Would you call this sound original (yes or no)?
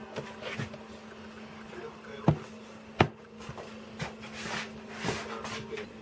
yes